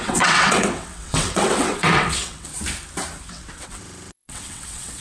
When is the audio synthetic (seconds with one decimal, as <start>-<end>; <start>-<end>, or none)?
0.0-2.5; 3.3-5.0